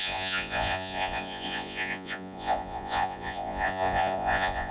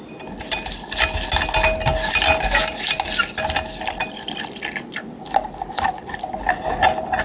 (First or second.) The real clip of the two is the second